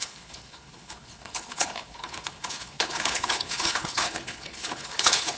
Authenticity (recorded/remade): remade